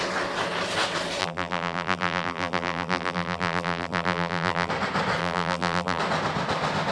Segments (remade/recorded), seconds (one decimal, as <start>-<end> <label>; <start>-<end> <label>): 0.0-1.2 recorded; 1.2-4.7 remade; 4.7-5.2 recorded; 5.2-6.0 remade; 6.0-6.9 recorded